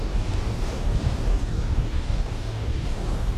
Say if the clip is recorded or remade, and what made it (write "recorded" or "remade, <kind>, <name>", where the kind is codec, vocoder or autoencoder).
remade, codec, DAC